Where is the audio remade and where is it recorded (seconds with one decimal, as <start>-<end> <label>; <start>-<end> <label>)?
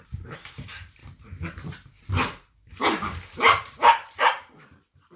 0.0-1.0 remade; 1.0-2.1 recorded; 2.1-5.2 remade